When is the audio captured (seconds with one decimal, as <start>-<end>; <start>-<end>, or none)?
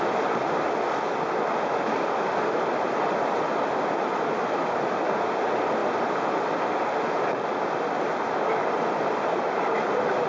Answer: 0.0-10.3